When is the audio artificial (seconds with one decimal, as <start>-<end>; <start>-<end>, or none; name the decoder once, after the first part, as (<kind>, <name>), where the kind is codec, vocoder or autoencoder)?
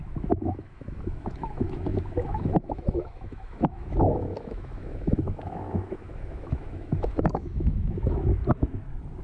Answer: 0.0-8.4 (autoencoder, DAC-VAE)